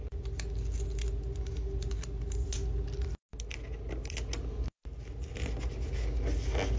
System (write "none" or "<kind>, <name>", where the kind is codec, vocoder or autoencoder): none